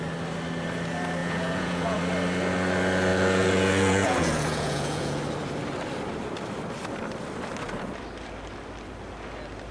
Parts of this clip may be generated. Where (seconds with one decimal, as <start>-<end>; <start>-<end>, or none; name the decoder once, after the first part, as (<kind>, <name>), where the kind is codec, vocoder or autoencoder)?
1.2-2.0 (vocoder, Vocos); 3.1-5.2